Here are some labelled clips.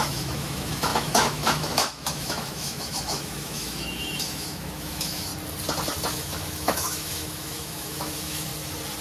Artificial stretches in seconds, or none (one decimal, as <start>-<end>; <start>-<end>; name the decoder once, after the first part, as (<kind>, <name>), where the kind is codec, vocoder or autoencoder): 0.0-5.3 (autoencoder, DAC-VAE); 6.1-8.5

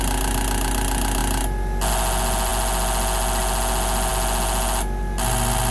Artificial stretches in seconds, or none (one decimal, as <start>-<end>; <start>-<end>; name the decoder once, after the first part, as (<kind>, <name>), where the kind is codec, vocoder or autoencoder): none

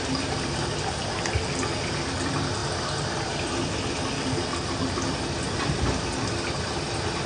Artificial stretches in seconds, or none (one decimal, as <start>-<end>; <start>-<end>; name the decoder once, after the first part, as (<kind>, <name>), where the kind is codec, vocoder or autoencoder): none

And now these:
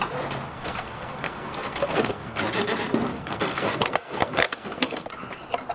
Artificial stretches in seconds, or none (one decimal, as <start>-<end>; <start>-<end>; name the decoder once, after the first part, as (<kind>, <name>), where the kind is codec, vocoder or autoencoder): 0.5-2.4 (codec, SNAC); 3.1-5.1